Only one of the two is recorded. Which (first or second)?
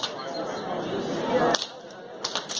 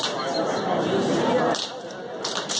first